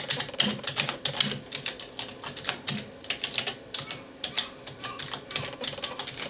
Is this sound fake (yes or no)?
no